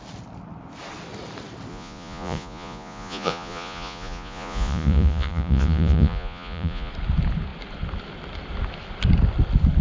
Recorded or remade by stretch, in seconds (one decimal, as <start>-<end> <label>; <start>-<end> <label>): 0.0-1.7 recorded; 1.7-6.9 remade; 6.9-9.8 recorded